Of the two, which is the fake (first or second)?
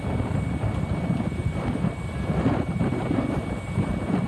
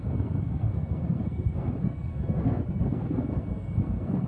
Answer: second